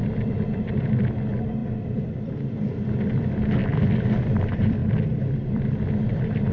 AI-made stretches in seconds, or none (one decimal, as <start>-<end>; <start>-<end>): 0.0-3.6; 4.2-4.8; 5.5-6.5